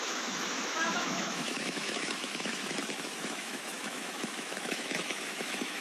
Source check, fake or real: fake